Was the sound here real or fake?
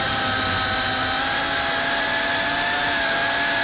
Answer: real